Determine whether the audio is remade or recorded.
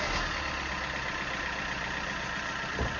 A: recorded